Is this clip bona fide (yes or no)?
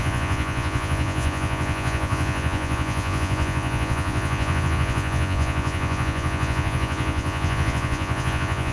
no